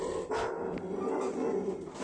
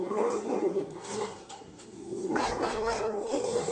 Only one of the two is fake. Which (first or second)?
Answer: second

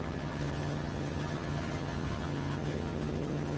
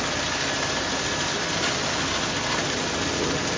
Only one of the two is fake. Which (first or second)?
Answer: first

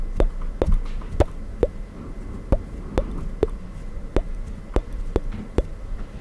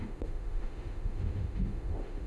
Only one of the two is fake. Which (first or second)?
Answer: second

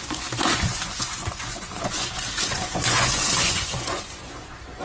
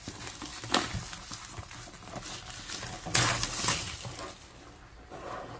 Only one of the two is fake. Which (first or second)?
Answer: first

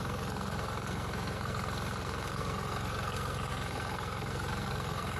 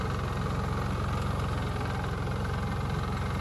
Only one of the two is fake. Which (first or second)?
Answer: first